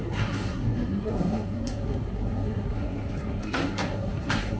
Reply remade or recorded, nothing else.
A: remade